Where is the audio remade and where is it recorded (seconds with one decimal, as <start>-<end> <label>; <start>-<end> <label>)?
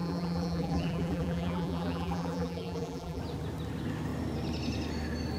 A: 0.0-3.2 remade; 3.2-5.4 recorded